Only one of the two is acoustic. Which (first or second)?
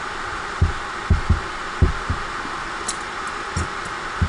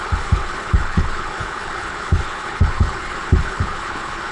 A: first